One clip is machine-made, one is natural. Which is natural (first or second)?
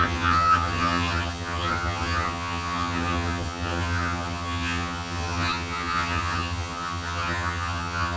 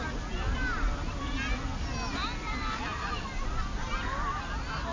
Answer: second